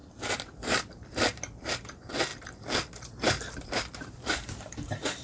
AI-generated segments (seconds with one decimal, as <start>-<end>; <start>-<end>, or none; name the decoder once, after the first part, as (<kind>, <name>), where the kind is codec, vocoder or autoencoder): 0.0-2.3 (vocoder, BigVGAN v2); 3.1-5.2